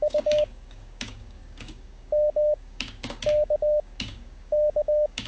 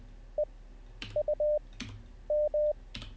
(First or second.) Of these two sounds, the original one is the second